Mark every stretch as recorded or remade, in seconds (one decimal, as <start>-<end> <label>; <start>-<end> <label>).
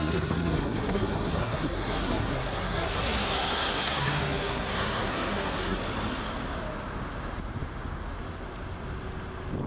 0.0-5.8 remade; 5.8-9.7 recorded